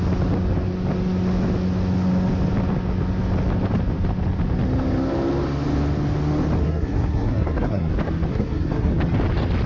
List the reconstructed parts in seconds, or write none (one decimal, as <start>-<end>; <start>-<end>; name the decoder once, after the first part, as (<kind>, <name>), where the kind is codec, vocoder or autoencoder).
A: 6.6-7.9 (codec, SNAC); 8.3-8.9